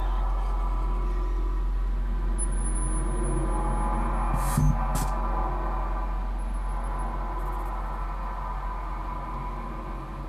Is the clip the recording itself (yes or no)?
yes